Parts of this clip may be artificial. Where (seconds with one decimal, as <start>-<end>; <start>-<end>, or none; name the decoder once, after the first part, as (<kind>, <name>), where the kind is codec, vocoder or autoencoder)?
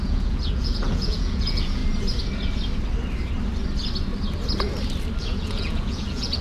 0.0-1.8 (vocoder, Vocos); 5.2-6.4